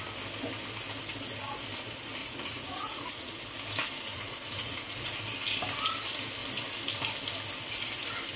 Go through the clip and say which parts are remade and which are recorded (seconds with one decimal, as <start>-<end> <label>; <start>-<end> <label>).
0.0-2.2 recorded; 2.2-3.3 remade; 3.3-4.1 recorded; 4.1-5.2 remade; 5.2-8.4 recorded